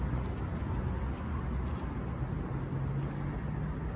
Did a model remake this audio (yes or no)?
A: no